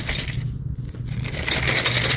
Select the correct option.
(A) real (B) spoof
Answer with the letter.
A